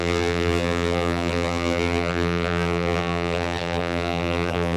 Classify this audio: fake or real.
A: fake